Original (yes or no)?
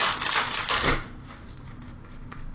yes